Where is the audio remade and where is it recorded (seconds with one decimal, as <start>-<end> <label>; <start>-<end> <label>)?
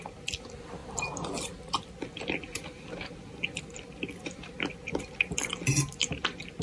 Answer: 0.0-6.6 recorded